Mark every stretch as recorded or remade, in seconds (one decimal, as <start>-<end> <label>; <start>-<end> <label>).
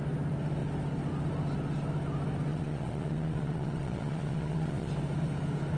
0.0-2.5 recorded; 2.5-4.9 remade; 4.9-5.8 recorded